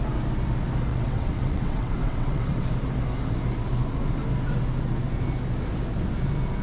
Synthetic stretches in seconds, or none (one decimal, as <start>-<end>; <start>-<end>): 0.9-2.7